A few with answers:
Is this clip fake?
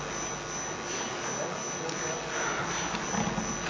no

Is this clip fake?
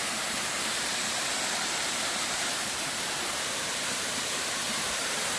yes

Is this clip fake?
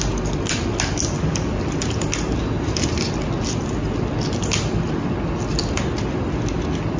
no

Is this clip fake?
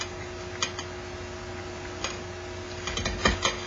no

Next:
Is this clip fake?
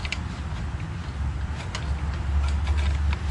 no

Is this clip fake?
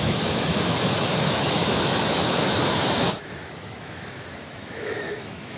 yes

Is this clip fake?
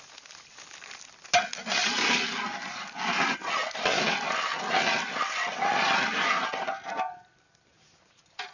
no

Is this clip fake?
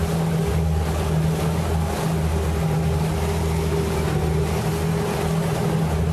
no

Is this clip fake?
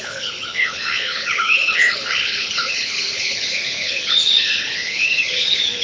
yes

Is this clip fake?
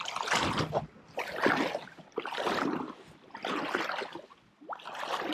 no